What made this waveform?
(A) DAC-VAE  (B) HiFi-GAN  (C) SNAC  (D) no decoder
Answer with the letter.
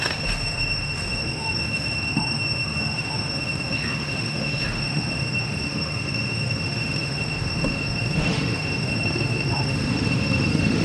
A